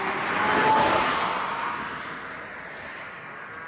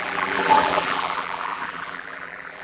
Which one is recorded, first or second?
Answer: first